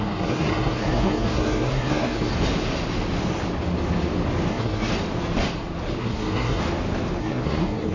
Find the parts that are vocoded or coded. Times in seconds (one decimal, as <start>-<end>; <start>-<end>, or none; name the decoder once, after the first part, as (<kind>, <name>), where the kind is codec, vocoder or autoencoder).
0.0-2.3 (codec, SNAC); 4.5-4.9; 6.0-6.6; 7.2-7.9